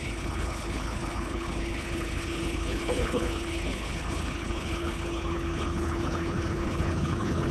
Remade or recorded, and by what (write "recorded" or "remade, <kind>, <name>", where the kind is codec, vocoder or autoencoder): remade, codec, HILCodec